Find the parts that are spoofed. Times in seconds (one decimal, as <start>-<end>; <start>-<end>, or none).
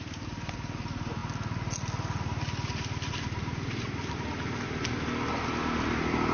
none